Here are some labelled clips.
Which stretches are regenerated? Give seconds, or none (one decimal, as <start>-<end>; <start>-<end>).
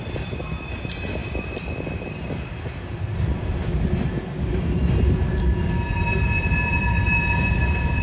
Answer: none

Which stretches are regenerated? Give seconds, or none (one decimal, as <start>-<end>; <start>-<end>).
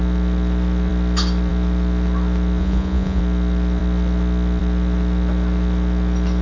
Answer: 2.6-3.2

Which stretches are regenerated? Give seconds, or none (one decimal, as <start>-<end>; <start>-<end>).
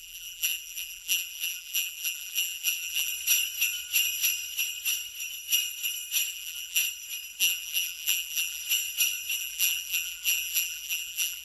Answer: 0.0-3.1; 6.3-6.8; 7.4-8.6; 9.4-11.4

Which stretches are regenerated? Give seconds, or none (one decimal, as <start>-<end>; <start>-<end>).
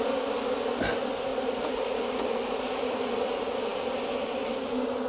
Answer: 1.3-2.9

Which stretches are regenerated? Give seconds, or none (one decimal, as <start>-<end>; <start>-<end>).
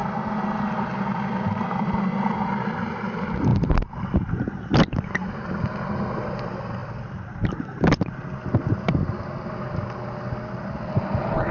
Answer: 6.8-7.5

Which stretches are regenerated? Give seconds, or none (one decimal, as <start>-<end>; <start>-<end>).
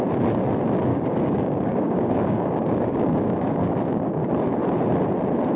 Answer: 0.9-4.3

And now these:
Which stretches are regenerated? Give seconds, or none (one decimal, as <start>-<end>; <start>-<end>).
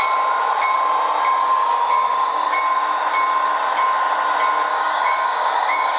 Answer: 1.4-2.6; 4.7-6.0